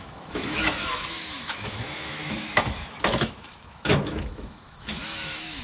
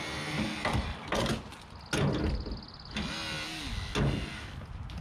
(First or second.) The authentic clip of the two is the second